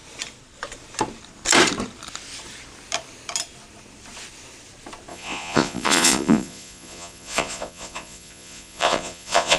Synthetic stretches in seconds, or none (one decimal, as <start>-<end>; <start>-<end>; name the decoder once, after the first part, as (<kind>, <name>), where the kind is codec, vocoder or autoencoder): 5.1-9.6 (vocoder, Vocos)